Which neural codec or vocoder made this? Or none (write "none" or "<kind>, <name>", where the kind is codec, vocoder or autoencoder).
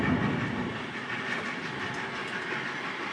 none